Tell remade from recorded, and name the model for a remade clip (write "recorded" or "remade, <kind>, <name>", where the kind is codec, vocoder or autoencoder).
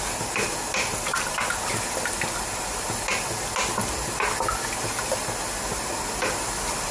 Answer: recorded